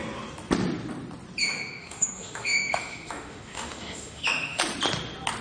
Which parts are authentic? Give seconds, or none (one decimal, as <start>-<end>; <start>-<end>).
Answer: 0.0-1.4; 4.6-5.4

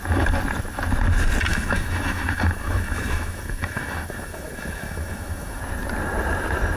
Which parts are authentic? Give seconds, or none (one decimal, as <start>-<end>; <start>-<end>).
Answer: 0.0-1.5; 5.6-6.8

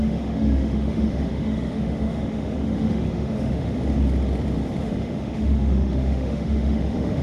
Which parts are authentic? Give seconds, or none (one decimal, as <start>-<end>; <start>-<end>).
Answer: 3.8-4.8

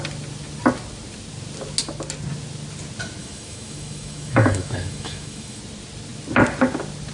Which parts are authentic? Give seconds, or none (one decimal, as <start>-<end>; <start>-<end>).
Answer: 0.0-3.2; 5.6-7.1